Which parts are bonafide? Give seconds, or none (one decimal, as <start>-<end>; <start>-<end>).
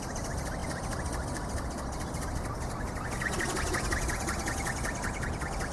0.0-5.7